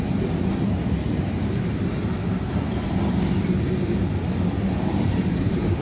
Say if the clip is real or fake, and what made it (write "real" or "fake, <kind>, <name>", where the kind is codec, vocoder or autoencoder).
fake, vocoder, BigVGAN v2